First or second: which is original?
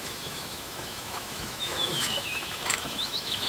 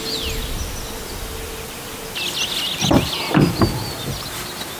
second